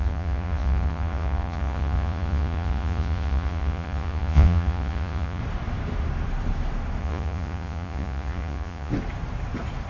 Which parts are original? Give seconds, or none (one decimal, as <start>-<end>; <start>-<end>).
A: 5.4-7.0; 8.9-9.9

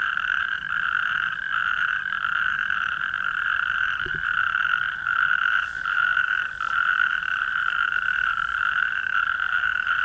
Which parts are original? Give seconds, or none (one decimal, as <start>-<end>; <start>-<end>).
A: none

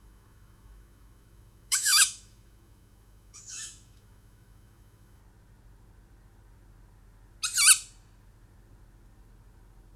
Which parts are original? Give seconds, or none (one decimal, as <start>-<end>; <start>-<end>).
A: 5.2-10.0

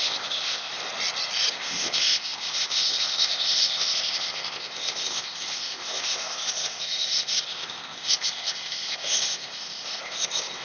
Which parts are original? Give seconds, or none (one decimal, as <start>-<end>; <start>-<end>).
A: 0.7-1.5

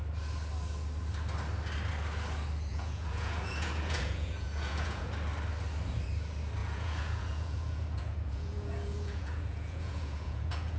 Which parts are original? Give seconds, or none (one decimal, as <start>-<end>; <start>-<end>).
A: 0.0-2.7; 5.1-6.6

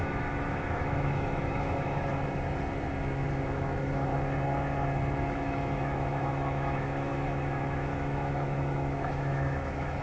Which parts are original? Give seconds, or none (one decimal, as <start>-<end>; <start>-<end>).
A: 2.1-3.3; 4.1-5.3